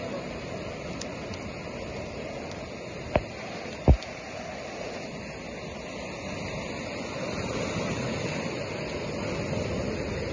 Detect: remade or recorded recorded